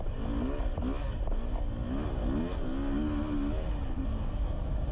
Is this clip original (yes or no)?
yes